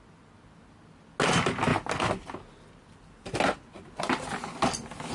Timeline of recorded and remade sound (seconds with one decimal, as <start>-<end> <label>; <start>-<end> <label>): 0.0-5.1 recorded